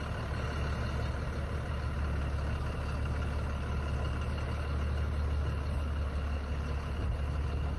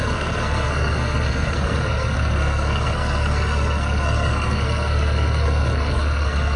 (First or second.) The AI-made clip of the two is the second